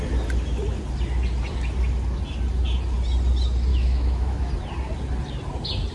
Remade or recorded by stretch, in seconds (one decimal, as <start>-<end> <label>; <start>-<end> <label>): 0.0-3.7 recorded; 3.7-4.5 remade; 4.5-5.9 recorded